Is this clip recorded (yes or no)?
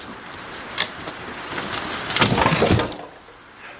yes